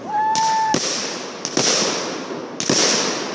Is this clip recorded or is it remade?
recorded